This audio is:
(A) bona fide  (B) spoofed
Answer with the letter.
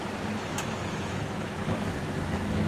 B